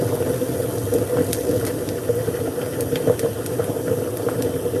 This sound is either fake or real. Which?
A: real